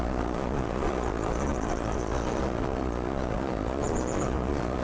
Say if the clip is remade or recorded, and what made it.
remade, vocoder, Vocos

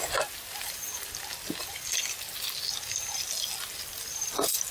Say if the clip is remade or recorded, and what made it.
recorded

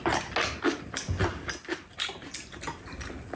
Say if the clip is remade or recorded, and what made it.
recorded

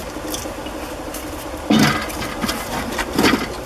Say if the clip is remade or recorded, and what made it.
recorded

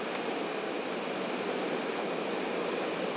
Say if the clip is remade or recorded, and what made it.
recorded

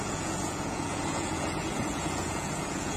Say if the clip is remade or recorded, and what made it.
remade, vocoder, Vocos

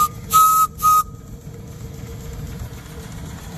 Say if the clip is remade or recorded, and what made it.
recorded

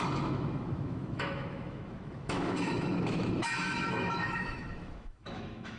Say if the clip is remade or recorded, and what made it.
remade, autoencoder, DAC-VAE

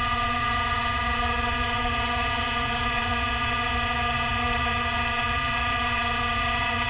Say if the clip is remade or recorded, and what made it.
remade, vocoder, HiFi-GAN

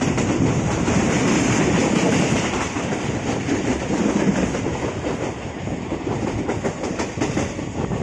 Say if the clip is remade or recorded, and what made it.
remade, vocoder, BigVGAN v2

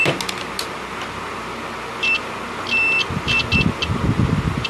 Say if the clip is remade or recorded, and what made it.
recorded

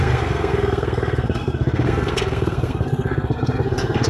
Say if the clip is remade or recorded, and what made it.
remade, codec, SNAC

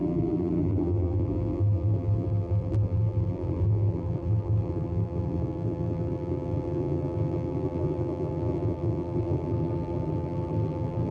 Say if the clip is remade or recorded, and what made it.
remade, vocoder, BigVGAN v2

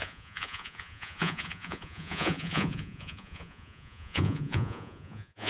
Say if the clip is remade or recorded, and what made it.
remade, vocoder, Vocos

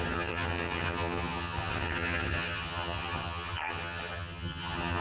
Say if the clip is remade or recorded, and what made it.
remade, vocoder, HiFi-GAN